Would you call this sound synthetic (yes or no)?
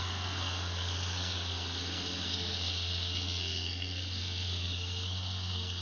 yes